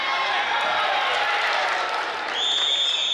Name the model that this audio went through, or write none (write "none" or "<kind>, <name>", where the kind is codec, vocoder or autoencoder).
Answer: none